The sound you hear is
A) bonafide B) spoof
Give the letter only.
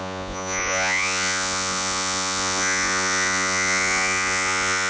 B